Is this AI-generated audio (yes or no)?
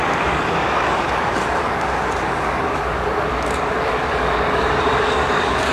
yes